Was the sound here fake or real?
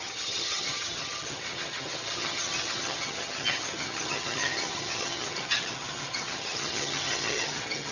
fake